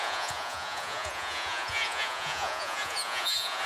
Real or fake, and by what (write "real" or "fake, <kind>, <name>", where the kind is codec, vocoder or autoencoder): fake, vocoder, Vocos